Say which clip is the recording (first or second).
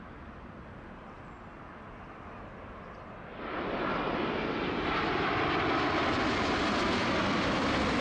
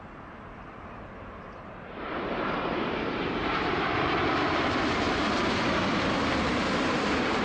first